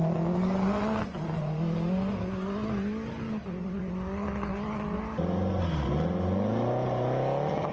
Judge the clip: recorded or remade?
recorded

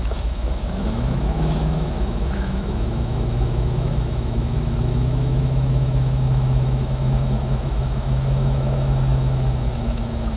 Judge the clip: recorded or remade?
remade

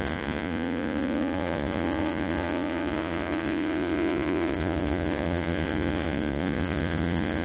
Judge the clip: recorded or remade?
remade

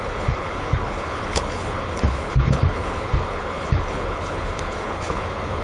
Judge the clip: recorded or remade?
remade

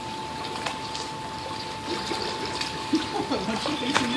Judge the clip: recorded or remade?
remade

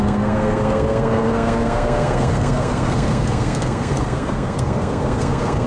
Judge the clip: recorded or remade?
remade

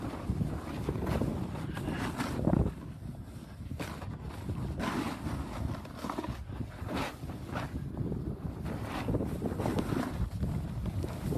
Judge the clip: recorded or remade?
recorded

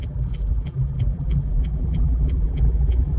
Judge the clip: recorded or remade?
remade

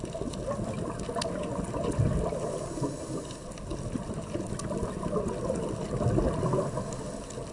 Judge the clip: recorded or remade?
recorded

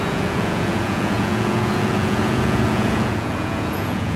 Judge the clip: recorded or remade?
remade